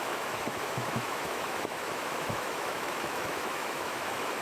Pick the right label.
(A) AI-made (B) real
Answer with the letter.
A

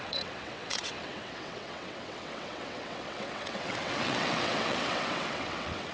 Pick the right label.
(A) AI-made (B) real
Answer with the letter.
A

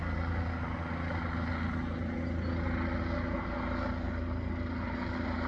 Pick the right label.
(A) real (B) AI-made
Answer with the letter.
A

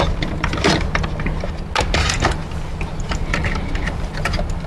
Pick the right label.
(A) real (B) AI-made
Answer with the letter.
A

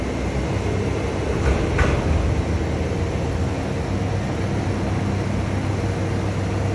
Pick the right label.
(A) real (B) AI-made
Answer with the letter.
A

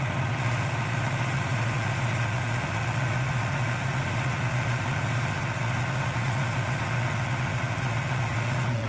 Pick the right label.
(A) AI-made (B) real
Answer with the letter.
A